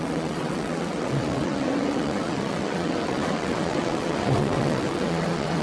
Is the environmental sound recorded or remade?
remade